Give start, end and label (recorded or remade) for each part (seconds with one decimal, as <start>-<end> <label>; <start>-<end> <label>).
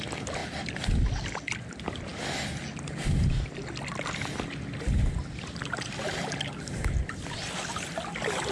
0.0-8.5 recorded